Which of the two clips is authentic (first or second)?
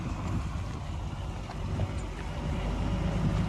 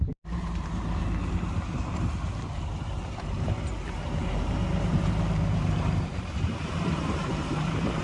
first